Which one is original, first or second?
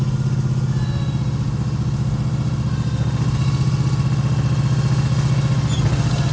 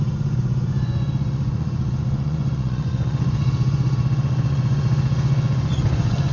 first